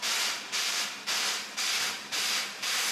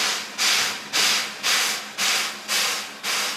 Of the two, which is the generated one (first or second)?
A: first